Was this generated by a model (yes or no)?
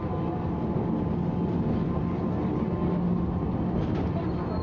no